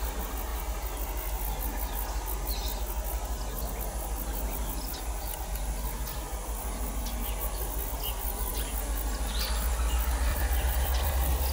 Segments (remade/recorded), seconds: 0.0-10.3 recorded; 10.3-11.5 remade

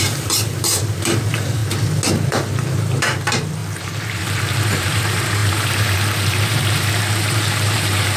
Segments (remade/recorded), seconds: 0.0-1.6 remade; 1.6-2.1 recorded; 2.1-8.2 remade

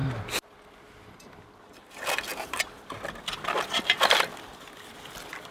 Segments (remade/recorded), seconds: 0.0-5.5 recorded

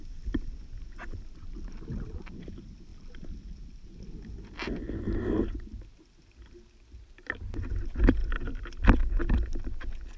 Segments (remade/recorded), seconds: 0.0-8.2 recorded; 8.2-8.7 remade; 8.7-10.2 recorded